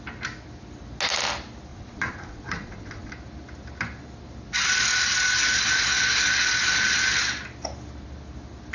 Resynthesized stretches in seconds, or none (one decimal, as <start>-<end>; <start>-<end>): 1.7-3.1